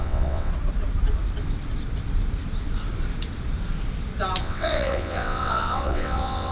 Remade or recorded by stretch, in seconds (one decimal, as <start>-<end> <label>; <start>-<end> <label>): 0.0-0.5 remade; 0.5-4.4 recorded; 4.4-6.5 remade